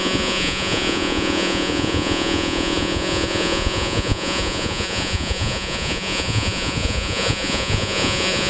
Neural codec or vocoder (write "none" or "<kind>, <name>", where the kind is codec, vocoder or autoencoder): vocoder, Vocos